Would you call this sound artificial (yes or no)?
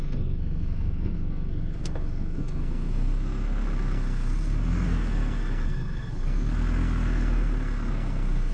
yes